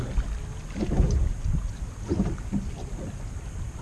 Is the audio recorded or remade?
recorded